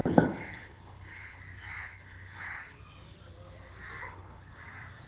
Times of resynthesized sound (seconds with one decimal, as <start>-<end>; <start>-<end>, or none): 0.0-1.4; 1.8-2.8; 4.0-4.6